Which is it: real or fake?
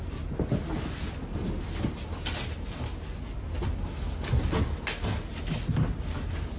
real